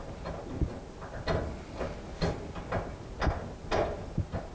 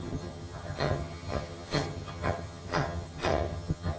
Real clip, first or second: first